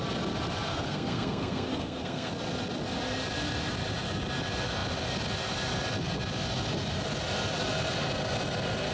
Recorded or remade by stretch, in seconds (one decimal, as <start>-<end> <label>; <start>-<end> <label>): 0.0-0.7 recorded; 0.7-2.3 remade; 2.3-8.9 recorded